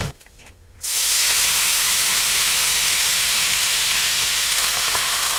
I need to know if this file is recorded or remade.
remade